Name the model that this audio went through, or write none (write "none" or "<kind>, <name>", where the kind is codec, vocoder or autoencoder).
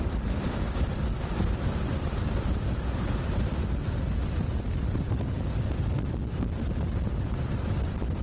vocoder, BigVGAN v2